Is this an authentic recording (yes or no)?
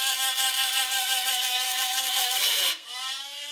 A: no